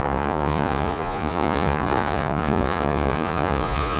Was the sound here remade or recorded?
remade